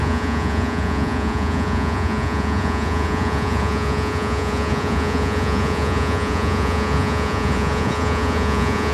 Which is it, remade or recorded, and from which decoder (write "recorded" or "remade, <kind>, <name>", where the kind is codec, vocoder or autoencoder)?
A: remade, vocoder, Vocos